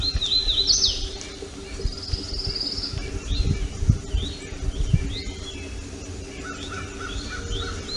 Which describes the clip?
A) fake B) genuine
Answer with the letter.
B